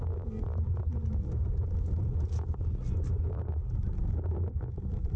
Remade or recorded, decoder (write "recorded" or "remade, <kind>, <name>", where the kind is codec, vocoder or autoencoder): recorded